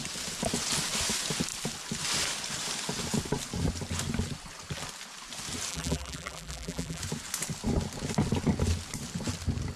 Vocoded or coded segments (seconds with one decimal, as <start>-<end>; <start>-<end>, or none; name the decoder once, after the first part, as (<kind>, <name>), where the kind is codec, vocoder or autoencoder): 5.7-7.0 (vocoder, BigVGAN v2)